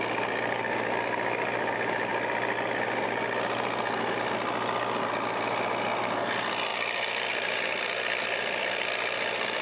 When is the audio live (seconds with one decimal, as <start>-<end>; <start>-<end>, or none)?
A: 0.0-2.1; 2.7-6.7